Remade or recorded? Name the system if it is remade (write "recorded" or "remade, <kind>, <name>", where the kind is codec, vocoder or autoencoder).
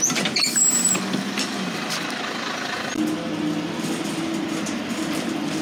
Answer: recorded